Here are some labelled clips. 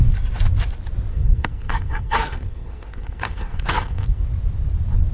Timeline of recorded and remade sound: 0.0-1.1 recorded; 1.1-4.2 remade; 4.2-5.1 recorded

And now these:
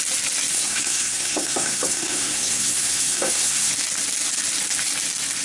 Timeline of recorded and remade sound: 0.0-0.5 recorded; 0.5-3.7 remade; 3.7-5.4 recorded

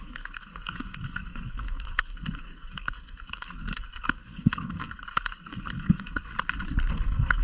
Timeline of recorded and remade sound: 0.0-6.3 remade; 6.3-6.9 recorded; 6.9-7.4 remade

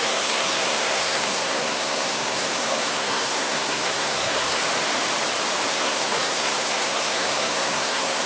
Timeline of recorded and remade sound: 0.0-4.6 remade; 4.6-5.7 recorded; 5.7-8.3 remade

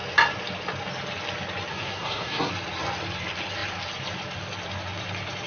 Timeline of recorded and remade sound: 0.0-1.7 recorded; 1.7-2.5 remade; 2.5-5.5 recorded